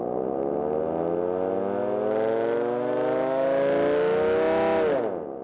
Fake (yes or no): no